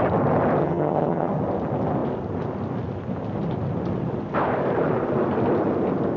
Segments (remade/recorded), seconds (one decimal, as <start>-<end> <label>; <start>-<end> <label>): 0.0-0.6 recorded; 0.6-1.3 remade; 1.3-6.2 recorded